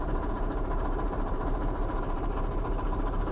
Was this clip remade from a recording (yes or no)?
yes